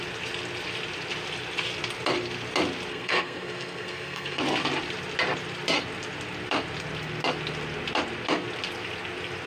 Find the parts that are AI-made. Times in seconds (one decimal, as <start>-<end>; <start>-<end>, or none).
2.9-4.4